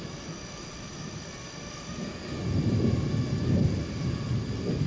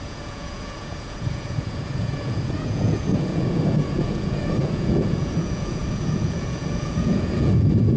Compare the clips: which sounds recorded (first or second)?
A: first